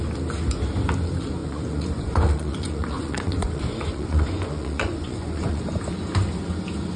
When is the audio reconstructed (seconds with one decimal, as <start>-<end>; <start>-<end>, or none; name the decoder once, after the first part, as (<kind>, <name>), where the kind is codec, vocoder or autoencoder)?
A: 1.4-5.6 (vocoder, Vocos)